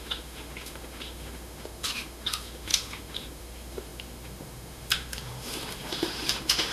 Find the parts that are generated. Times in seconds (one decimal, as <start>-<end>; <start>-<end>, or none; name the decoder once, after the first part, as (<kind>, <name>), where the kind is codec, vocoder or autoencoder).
0.0-6.7 (autoencoder, DAC-VAE)